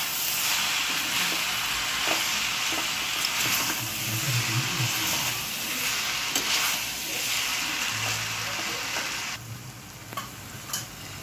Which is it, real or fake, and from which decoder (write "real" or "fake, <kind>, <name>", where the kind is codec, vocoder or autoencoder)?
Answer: real